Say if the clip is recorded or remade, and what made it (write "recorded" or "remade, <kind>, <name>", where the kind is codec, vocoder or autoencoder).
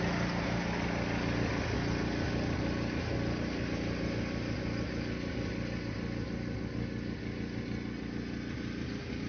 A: recorded